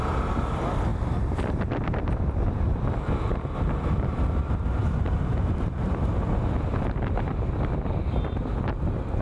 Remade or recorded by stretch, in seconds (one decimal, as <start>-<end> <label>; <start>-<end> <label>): 0.0-9.2 recorded